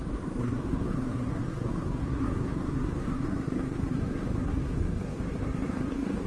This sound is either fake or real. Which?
fake